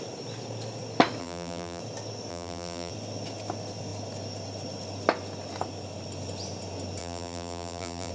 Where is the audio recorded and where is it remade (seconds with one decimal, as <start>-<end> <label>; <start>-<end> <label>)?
0.0-1.2 recorded; 1.2-1.8 remade; 1.8-2.3 recorded; 2.3-2.9 remade; 2.9-7.0 recorded; 7.0-8.1 remade